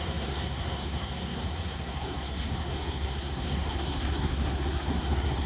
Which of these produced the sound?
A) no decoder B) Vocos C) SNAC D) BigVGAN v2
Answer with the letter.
C